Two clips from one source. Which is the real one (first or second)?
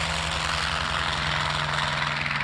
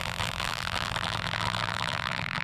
first